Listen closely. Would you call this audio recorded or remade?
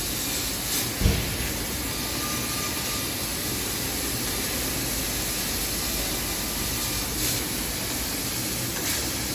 recorded